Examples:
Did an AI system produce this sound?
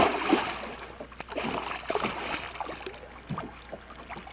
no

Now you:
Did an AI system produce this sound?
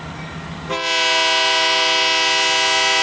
no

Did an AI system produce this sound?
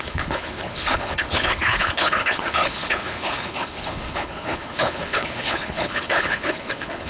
yes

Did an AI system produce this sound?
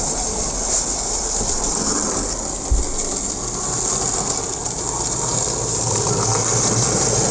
no